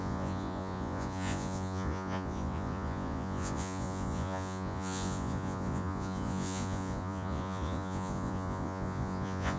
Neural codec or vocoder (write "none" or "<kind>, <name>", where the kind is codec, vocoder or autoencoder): vocoder, Vocos